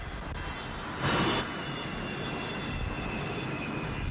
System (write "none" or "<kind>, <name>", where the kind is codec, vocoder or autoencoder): none